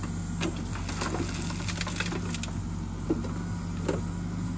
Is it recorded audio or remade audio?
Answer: recorded